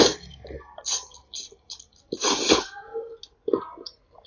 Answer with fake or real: real